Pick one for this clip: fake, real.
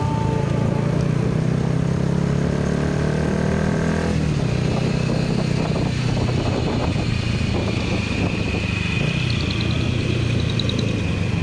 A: real